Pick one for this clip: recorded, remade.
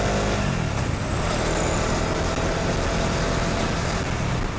recorded